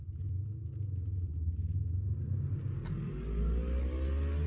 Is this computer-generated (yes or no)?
no